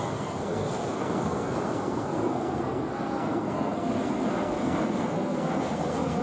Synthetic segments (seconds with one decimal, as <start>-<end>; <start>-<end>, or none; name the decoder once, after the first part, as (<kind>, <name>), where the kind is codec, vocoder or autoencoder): 0.0-6.2 (codec, SNAC)

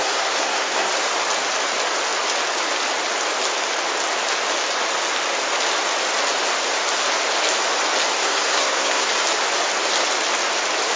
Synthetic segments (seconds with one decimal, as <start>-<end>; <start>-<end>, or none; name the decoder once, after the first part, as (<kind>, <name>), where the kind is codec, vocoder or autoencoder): 0.0-0.9 (codec, SNAC); 8.2-9.1

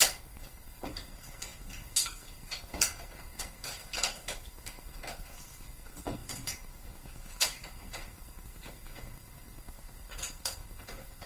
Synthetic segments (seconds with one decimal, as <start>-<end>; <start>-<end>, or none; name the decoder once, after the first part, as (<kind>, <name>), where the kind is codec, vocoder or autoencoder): 0.0-11.3 (codec, SNAC)

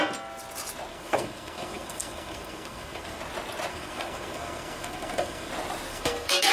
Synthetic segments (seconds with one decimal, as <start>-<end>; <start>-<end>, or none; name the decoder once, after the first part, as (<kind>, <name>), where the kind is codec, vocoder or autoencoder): 0.9-3.2 (codec, SNAC); 3.7-5.5; 5.9-6.5

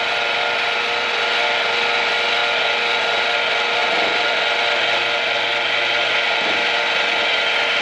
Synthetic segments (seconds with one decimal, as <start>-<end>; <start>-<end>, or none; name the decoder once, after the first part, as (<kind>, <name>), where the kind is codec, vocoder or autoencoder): none

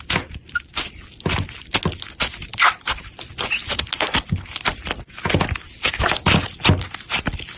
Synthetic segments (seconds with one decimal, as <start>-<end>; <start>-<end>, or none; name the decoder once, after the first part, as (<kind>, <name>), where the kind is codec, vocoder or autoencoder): none

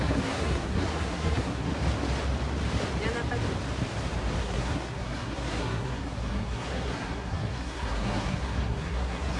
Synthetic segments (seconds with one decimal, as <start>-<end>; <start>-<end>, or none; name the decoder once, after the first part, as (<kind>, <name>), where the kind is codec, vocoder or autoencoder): 0.0-1.7 (codec, SNAC); 4.4-9.4